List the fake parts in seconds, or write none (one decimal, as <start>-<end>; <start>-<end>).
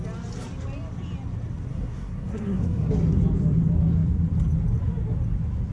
1.7-2.9